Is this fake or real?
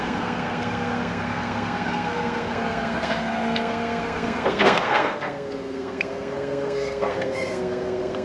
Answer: fake